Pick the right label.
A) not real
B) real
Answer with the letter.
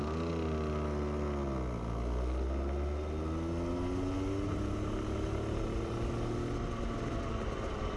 B